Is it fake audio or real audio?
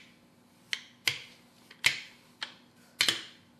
real